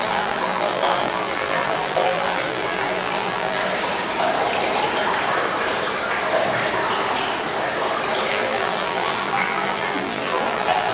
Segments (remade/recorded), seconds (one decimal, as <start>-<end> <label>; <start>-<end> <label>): 0.0-3.6 remade; 3.6-8.3 recorded; 8.3-10.9 remade